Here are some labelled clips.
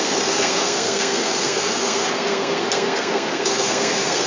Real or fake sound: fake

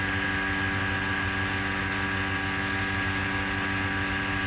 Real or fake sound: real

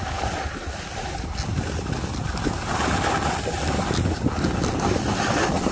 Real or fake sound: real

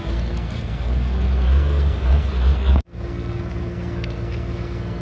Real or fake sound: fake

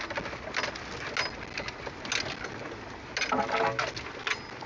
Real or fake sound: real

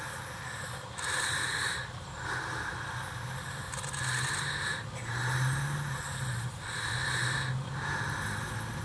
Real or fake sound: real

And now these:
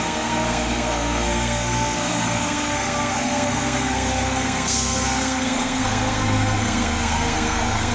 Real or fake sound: fake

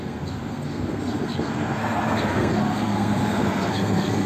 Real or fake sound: fake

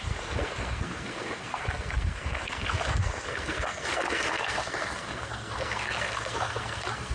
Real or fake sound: fake